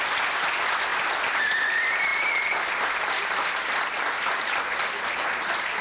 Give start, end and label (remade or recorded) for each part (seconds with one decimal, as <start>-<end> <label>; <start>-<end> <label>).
0.0-0.9 recorded; 0.9-1.4 remade; 1.4-2.1 recorded; 2.1-5.2 remade; 5.2-5.8 recorded